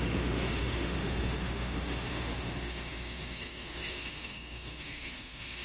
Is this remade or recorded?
remade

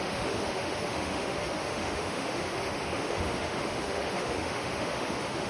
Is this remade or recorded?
remade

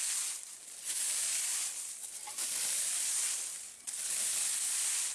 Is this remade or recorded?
recorded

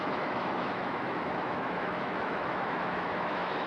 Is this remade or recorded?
remade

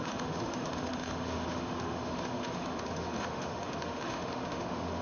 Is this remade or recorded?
remade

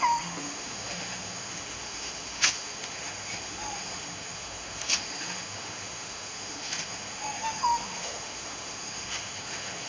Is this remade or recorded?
remade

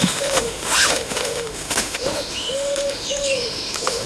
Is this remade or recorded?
remade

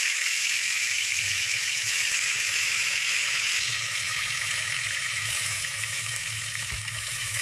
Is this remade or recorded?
remade